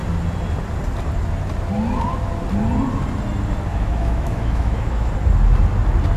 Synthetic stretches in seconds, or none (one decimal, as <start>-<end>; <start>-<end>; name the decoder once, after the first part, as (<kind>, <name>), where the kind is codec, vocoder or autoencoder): 3.7-5.1 (autoencoder, DAC-VAE)